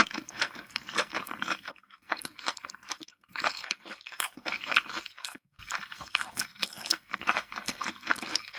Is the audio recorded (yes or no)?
no